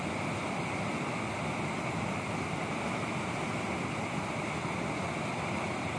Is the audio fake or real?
real